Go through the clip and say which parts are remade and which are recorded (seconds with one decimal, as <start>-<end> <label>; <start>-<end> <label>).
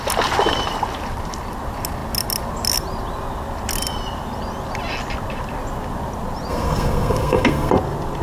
0.0-6.5 recorded; 6.5-7.7 remade; 7.7-8.2 recorded